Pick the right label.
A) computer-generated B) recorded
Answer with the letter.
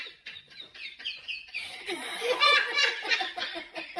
A